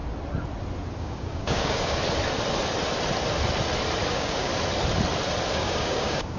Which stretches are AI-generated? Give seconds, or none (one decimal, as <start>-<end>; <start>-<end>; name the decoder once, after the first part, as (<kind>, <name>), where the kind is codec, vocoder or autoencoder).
1.0-2.0 (codec, DAC); 4.1-4.5; 5.5-6.4